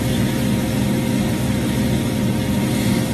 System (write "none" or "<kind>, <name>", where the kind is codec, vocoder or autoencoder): none